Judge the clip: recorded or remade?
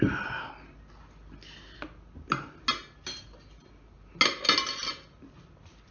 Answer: recorded